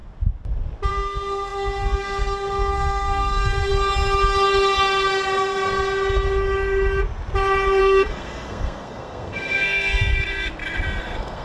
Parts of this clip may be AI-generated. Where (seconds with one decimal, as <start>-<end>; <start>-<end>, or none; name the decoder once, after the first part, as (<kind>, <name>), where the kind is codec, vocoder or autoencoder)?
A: 0.9-3.7 (codec, SNAC); 7.8-10.1; 11.0-11.4